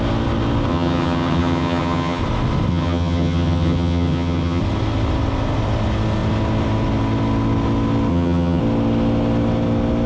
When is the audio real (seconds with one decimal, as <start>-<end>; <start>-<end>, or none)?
0.0-0.7; 2.2-2.7; 4.6-8.1; 8.6-10.1